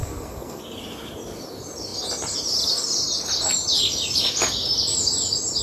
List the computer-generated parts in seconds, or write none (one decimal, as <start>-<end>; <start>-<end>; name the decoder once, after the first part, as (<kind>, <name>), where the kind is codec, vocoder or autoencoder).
0.0-0.6 (codec, SNAC)